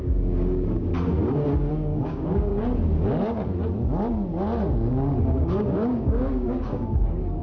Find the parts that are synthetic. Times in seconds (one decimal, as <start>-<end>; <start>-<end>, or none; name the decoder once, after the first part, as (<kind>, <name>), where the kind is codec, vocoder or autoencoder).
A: 0.0-0.9 (codec, DAC); 1.7-2.5; 5.2-7.4